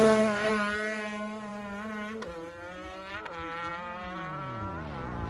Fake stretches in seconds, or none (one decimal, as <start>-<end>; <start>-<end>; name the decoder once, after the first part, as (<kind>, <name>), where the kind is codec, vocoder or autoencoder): 0.0-0.5 (codec, SNAC)